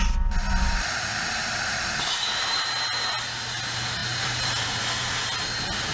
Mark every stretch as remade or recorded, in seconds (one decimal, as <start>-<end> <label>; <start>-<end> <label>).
0.0-1.1 recorded; 1.1-2.7 remade; 2.7-4.0 recorded; 4.0-4.8 remade; 4.8-5.9 recorded